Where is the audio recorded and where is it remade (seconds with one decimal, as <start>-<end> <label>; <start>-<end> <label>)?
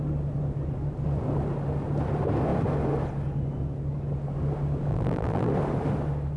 0.0-4.9 recorded; 4.9-5.5 remade; 5.5-6.4 recorded